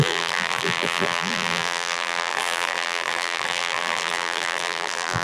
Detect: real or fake fake